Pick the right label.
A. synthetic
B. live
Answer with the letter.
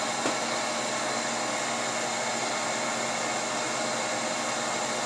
B